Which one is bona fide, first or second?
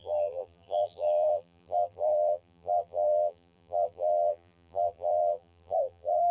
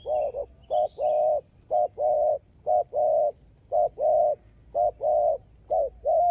second